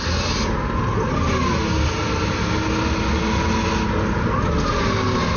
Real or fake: real